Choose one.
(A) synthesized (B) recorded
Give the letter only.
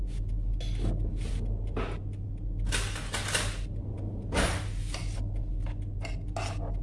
B